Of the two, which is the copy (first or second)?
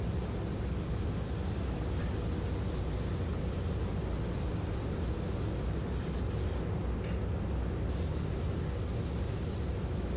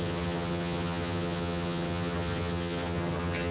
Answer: second